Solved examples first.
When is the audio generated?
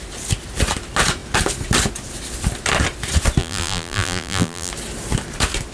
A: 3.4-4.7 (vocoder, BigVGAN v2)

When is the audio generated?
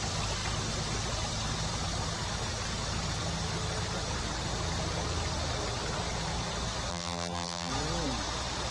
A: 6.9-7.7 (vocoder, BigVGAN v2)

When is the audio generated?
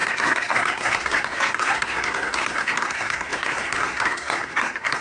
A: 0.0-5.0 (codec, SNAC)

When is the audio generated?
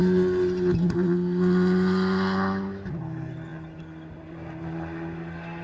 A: none